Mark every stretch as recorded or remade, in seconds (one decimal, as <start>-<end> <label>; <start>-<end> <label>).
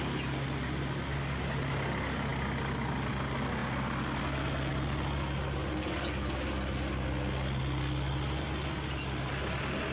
0.0-9.9 recorded